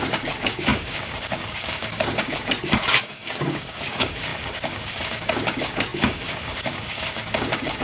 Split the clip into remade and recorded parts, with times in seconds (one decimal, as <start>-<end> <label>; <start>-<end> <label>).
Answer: 0.0-7.8 remade